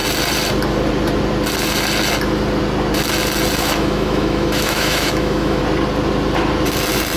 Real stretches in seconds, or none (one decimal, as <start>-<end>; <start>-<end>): 0.0-3.6; 5.6-7.2